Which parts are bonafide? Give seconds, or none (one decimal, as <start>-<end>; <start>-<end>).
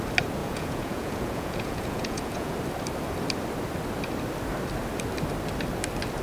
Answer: 0.0-0.4; 2.5-6.2